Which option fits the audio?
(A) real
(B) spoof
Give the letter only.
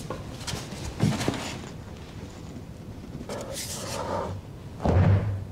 A